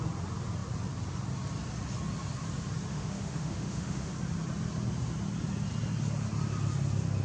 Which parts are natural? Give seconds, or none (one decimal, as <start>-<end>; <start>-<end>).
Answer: 0.0-2.9; 4.1-7.2